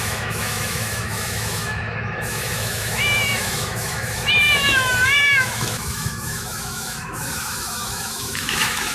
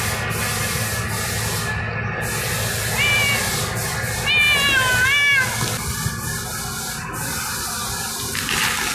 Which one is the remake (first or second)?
first